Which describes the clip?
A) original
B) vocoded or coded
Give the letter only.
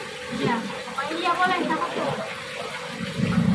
A